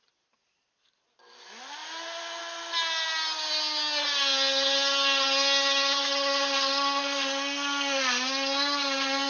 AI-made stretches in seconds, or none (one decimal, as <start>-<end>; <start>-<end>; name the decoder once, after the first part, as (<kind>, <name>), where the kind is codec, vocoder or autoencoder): none